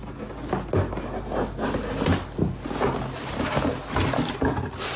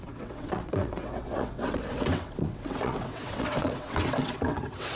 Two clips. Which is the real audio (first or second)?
first